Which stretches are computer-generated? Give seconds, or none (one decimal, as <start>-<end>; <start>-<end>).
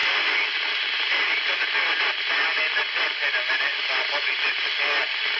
none